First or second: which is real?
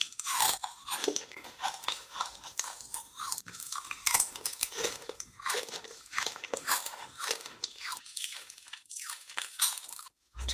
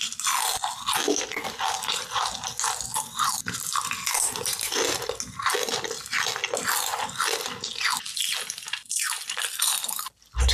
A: second